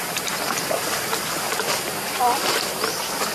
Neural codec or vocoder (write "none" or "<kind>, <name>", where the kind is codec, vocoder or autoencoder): none